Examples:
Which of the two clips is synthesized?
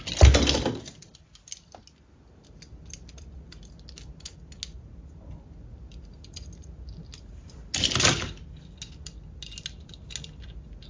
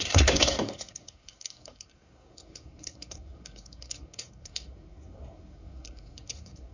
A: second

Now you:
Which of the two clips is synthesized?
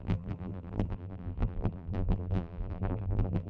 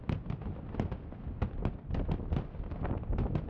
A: first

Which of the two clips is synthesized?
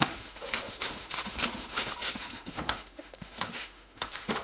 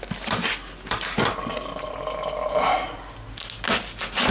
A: first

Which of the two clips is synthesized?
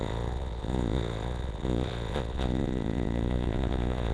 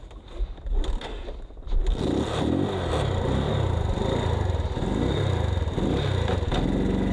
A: first